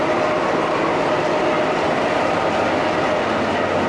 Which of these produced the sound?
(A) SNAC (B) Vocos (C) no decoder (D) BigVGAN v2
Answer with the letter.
C